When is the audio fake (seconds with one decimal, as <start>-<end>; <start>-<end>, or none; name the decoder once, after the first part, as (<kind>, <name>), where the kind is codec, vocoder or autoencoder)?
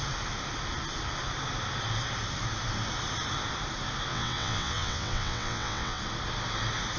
4.1-6.0 (vocoder, WaveNeXt)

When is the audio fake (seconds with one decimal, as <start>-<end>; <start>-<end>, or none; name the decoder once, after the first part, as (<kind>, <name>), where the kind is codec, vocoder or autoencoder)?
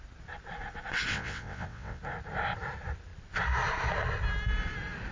1.1-2.0 (vocoder, WaveNeXt)